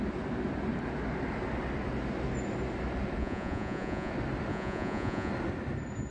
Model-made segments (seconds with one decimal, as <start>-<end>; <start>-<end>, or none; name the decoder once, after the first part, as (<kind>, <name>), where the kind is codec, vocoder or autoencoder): 3.2-4.1 (vocoder, Vocos); 4.5-5.3